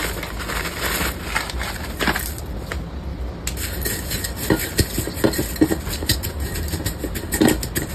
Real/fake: real